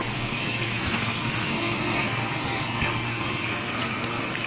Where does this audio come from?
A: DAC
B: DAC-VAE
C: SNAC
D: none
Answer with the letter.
C